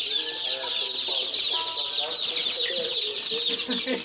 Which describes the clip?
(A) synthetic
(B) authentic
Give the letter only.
B